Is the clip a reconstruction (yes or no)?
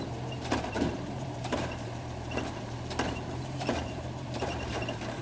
yes